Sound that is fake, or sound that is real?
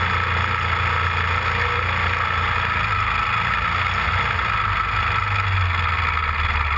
real